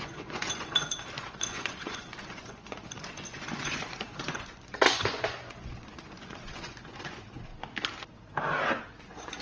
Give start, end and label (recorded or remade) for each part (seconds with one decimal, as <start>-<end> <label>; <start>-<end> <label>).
0.0-7.5 remade; 7.5-9.0 recorded; 9.0-9.4 remade